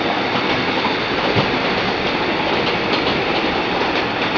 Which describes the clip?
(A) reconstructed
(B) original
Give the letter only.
B